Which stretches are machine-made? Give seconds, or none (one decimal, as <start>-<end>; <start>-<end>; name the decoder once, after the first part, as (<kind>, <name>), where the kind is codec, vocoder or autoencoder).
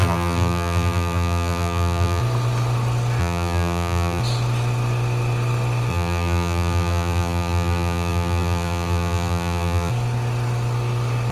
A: 0.0-2.2 (vocoder, BigVGAN v2); 3.2-4.2; 5.9-9.9